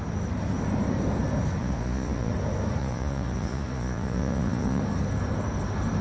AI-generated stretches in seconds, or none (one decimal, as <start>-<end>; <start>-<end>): 1.6-2.3; 2.8-4.8

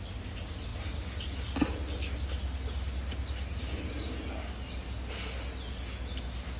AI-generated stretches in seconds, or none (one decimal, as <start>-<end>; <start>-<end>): none

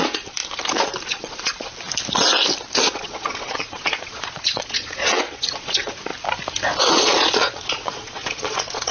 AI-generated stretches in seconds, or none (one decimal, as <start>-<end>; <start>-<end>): 0.0-0.4; 1.1-1.7; 2.8-6.1; 6.9-8.9